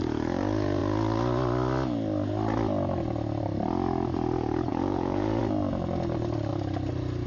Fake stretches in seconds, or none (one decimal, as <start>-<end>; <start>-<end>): 4.7-5.4